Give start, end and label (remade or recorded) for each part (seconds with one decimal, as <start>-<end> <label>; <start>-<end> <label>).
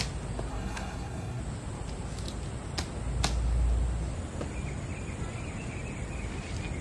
0.0-0.5 recorded; 0.5-1.4 remade; 1.4-6.8 recorded